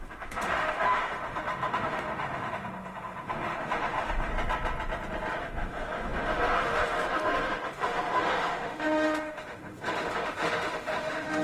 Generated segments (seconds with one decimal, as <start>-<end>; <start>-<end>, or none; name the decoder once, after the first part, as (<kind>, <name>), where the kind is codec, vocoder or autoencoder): 0.0-4.3 (autoencoder, DAC-VAE); 5.4-11.4